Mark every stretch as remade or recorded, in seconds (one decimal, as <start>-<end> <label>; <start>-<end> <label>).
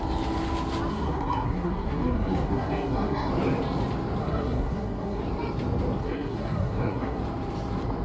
0.0-0.9 recorded; 0.9-3.3 remade; 3.3-4.2 recorded; 4.2-5.2 remade; 5.2-6.0 recorded; 6.0-7.2 remade; 7.2-8.0 recorded